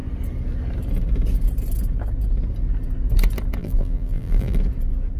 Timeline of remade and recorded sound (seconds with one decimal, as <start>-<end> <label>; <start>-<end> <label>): 0.0-3.6 recorded; 3.6-4.6 remade; 4.6-5.2 recorded